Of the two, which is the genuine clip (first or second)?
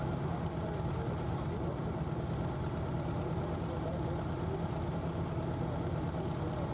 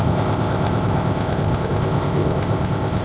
first